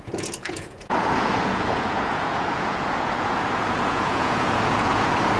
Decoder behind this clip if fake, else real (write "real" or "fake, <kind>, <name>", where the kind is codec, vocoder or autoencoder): fake, vocoder, Vocos